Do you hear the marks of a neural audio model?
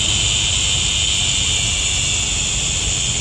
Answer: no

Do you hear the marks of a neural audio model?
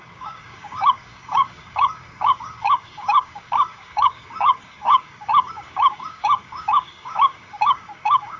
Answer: yes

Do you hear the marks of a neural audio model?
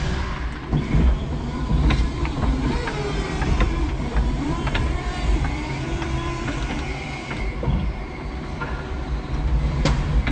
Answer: yes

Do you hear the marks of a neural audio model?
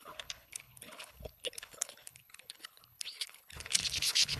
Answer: yes